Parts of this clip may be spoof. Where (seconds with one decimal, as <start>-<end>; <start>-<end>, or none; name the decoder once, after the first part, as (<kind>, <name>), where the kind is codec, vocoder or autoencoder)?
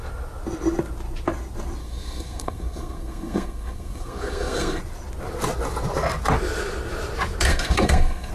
1.8-4.8 (codec, SNAC); 7.5-8.3